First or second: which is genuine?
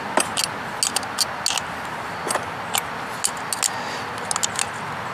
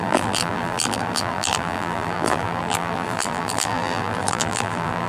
first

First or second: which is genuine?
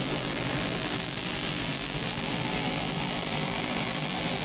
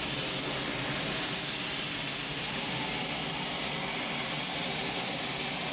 second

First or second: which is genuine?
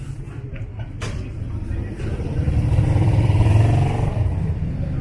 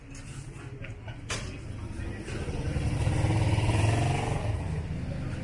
second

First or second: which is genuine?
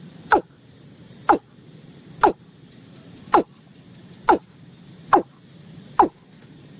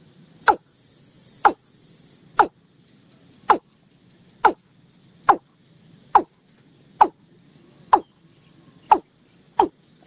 second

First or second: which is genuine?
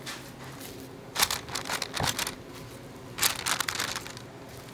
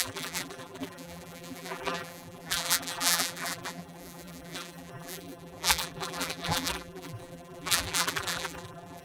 first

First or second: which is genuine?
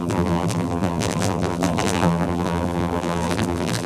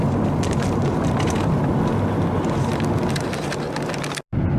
second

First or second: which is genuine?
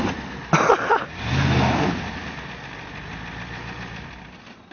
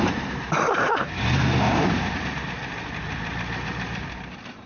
first